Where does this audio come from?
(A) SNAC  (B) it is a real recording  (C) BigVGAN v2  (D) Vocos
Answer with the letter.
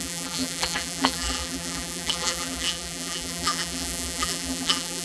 C